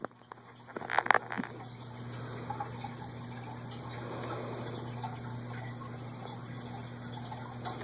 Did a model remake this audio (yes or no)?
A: no